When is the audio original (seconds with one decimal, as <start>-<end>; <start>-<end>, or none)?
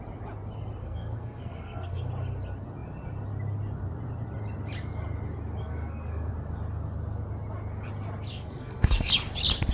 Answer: 0.0-0.8; 2.1-5.6; 6.3-8.3; 9.1-9.7